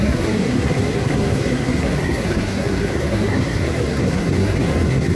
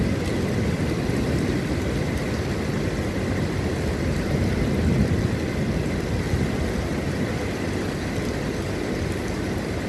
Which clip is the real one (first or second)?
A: second